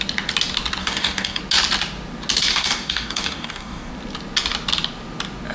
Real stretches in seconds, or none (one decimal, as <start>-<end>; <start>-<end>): 0.0-0.8; 1.4-2.5; 3.9-5.5